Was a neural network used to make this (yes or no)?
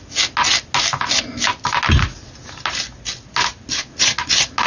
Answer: no